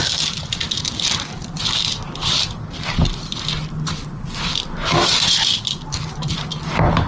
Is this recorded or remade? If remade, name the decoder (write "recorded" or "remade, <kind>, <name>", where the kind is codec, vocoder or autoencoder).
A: recorded